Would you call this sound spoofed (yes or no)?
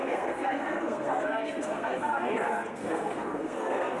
yes